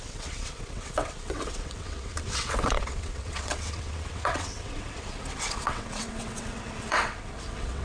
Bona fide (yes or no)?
no